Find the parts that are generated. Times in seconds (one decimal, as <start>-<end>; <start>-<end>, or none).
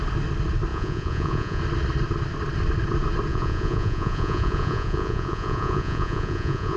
0.7-1.6; 3.3-6.8